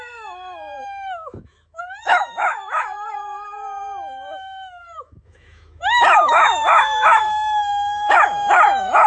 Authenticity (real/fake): fake